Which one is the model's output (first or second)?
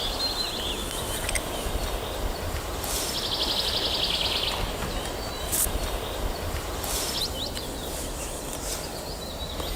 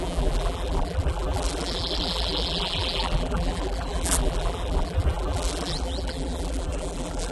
second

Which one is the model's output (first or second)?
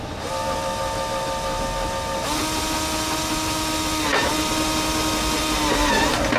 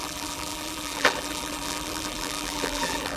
second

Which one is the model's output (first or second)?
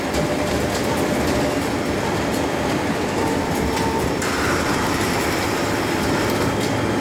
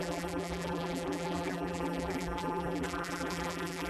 second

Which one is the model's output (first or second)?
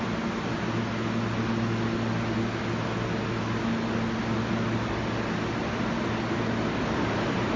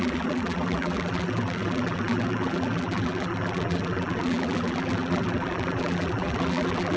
second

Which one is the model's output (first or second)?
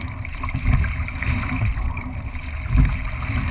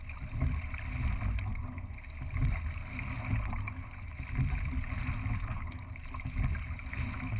first